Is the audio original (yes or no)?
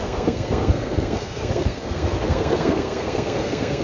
no